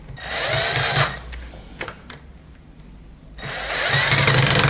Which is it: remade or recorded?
recorded